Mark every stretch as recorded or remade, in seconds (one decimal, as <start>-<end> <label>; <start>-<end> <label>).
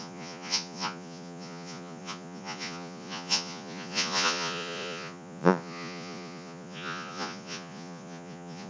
0.0-8.7 remade